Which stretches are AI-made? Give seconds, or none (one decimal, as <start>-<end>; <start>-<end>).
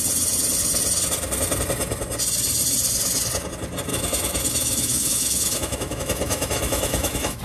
3.9-7.4